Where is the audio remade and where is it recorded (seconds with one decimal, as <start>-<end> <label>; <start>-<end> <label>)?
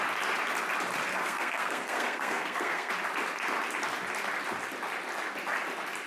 0.0-1.1 recorded; 1.1-2.9 remade; 2.9-6.1 recorded